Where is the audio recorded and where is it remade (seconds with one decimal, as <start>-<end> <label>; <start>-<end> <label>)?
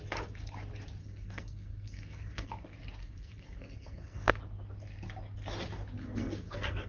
0.0-1.0 recorded; 1.0-2.5 remade; 2.5-3.0 recorded; 3.0-4.4 remade; 4.4-6.0 recorded; 6.0-6.9 remade